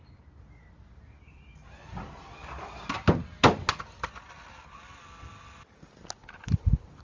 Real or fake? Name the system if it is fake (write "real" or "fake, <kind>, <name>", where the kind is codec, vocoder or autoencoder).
real